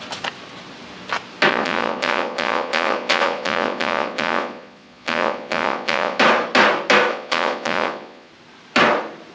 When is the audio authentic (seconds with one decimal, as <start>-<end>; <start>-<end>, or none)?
0.0-1.5; 6.2-7.1; 8.3-9.3